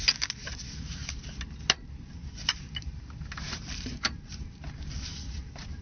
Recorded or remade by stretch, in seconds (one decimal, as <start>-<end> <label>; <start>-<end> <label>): 0.0-0.4 recorded; 0.4-1.4 remade; 1.4-2.2 recorded; 2.2-5.8 remade